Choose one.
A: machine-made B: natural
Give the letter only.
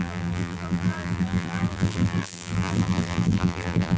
A